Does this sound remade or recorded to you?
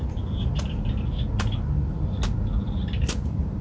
recorded